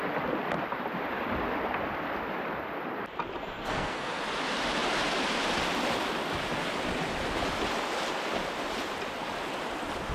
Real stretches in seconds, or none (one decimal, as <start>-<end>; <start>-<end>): 0.0-3.4; 4.2-10.1